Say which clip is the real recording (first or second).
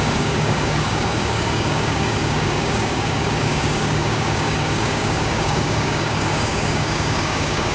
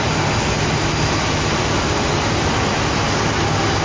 second